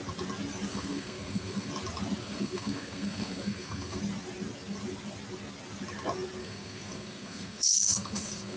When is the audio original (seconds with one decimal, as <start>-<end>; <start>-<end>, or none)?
0.0-0.7; 1.7-2.2; 4.0-6.4